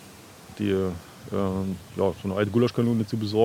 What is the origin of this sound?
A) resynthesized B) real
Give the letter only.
B